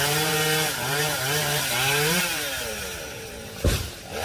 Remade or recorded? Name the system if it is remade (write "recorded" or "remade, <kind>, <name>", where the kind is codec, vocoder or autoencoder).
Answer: remade, vocoder, BigVGAN v2